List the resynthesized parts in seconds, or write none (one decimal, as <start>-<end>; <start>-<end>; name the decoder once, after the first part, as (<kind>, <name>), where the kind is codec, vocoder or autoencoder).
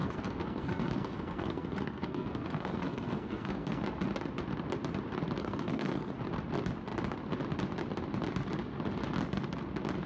0.0-3.8 (codec, SNAC); 5.4-6.1